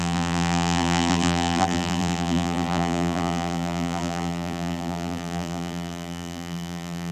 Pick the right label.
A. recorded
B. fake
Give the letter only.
B